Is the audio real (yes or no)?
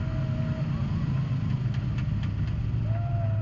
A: yes